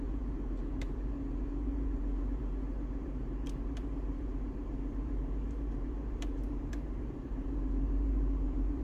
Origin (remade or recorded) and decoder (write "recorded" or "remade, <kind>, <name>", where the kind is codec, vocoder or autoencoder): remade, vocoder, BigVGAN v2